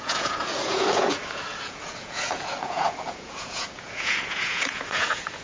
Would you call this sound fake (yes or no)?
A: yes